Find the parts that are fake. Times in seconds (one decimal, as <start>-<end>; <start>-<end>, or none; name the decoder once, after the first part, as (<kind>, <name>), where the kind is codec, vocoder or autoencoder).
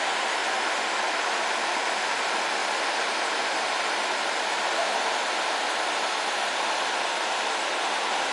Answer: none